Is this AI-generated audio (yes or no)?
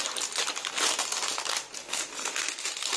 no